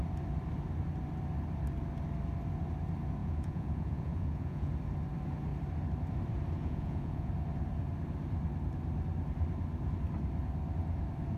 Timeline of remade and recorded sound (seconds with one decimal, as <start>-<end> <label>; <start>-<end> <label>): 0.0-3.2 recorded; 3.2-4.7 remade; 4.7-6.6 recorded; 6.6-7.3 remade; 7.3-11.4 recorded